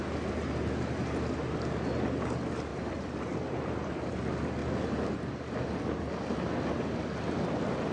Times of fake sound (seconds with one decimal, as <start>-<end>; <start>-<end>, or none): 2.7-4.1; 4.6-5.3